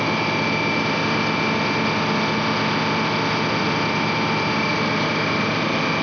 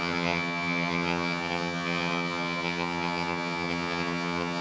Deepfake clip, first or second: second